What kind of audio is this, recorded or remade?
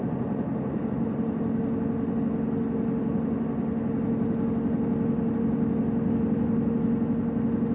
recorded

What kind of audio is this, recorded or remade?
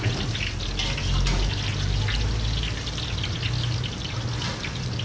recorded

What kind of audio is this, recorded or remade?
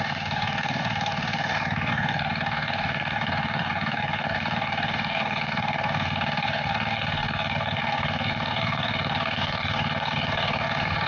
remade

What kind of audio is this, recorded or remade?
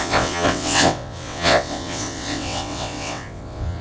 remade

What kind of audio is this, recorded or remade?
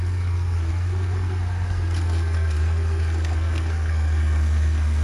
remade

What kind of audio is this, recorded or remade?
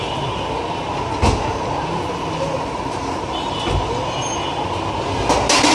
recorded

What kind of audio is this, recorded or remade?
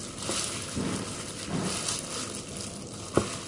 recorded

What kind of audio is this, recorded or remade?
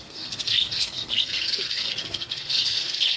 remade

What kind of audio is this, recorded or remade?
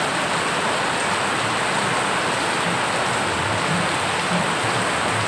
recorded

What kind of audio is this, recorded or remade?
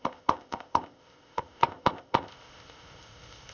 remade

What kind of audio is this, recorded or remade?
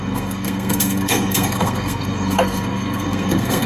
remade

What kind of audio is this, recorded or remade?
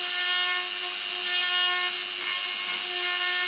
recorded